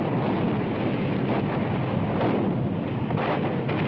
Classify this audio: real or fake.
real